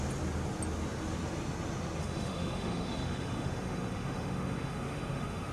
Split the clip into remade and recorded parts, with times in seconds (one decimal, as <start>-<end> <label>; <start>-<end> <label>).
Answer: 0.0-2.0 recorded; 2.0-5.5 remade